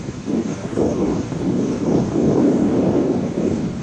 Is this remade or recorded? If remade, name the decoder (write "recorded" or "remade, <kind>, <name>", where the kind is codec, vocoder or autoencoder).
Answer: remade, codec, DAC